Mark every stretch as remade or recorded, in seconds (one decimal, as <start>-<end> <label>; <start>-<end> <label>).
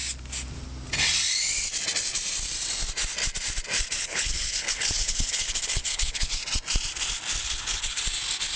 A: 0.0-4.0 recorded; 4.0-6.4 remade; 6.4-7.4 recorded; 7.4-8.0 remade; 8.0-8.6 recorded